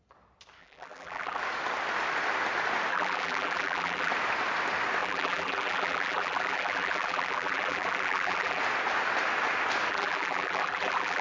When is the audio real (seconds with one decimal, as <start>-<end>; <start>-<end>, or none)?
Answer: 0.0-0.6; 1.4-2.9; 4.1-5.0; 8.6-9.9